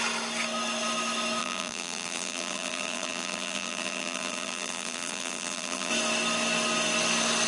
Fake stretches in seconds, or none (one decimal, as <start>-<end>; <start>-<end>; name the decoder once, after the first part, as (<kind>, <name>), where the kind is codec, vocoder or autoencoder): 1.4-5.9 (vocoder, BigVGAN v2)